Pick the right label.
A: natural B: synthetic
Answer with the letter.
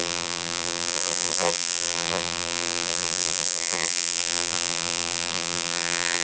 B